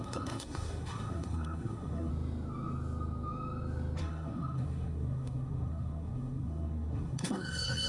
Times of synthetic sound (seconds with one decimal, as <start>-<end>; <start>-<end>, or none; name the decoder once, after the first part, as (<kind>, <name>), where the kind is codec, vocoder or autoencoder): 0.0-2.1 (codec, SNAC); 4.0-7.9